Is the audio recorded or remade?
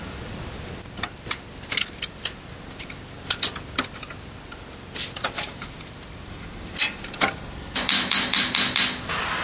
recorded